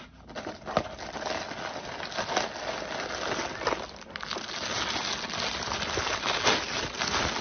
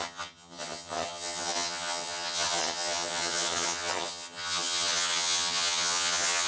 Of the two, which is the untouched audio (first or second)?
first